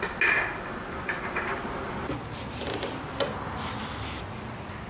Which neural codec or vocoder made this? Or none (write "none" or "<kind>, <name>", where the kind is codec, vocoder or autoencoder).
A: none